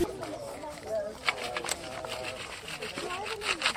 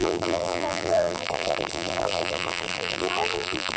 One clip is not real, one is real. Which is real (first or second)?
first